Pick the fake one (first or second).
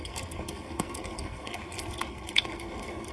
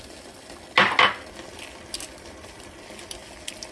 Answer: first